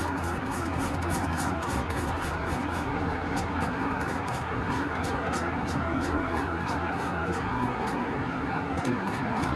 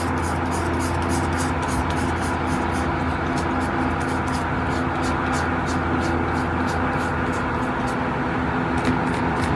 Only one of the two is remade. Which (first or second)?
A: first